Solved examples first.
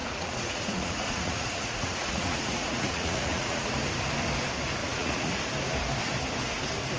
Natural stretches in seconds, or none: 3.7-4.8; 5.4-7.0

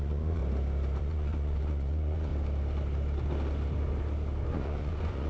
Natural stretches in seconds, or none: 0.4-1.0; 2.3-4.5

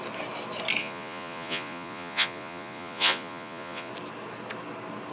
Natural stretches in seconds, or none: 0.0-0.8; 3.9-5.1

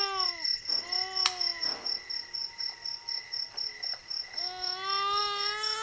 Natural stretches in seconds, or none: 0.0-5.8

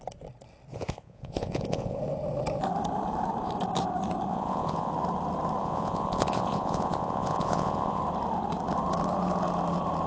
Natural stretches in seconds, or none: 0.0-0.7; 2.0-4.3; 4.9-5.6; 8.0-10.1